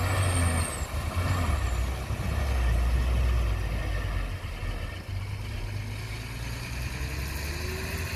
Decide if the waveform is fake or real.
real